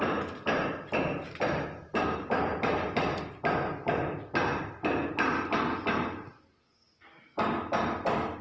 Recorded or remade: recorded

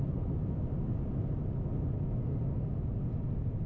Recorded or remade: recorded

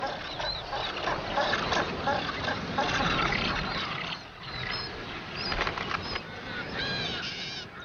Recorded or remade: recorded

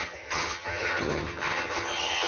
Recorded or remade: remade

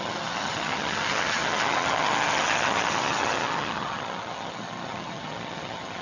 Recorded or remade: remade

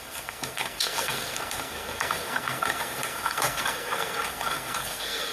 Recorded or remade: remade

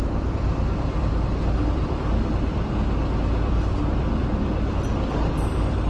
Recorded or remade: remade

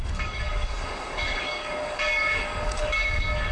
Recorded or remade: remade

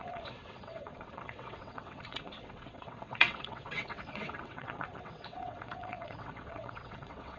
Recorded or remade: remade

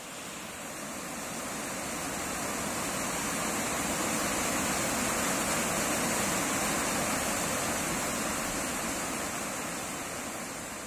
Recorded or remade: recorded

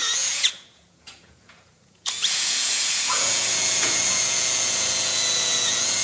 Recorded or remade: remade